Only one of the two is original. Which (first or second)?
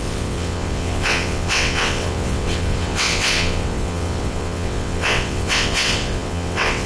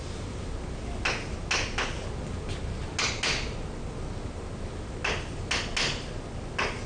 second